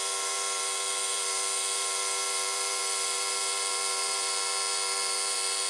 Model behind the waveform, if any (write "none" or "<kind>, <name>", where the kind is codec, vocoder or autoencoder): vocoder, BigVGAN v2